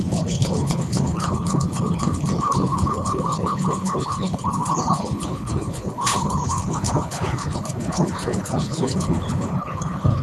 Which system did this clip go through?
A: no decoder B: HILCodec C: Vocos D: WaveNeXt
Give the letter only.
B